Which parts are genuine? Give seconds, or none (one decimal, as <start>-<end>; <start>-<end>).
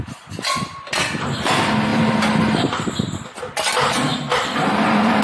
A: 0.0-1.9; 3.5-4.1